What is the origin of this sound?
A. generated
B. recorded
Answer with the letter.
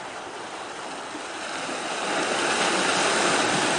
A